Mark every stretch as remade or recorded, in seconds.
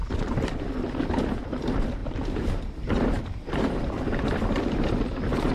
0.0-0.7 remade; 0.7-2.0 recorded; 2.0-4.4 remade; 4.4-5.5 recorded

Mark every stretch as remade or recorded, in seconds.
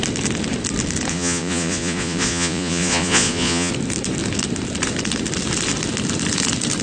0.0-1.1 recorded; 1.1-3.7 remade; 3.7-6.8 recorded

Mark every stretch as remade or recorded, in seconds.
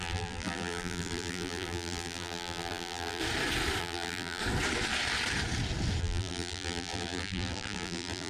0.0-3.2 remade; 3.2-3.8 recorded; 3.8-4.4 remade; 4.4-6.0 recorded; 6.0-8.3 remade